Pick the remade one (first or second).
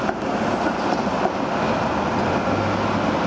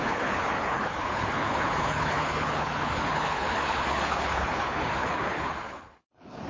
second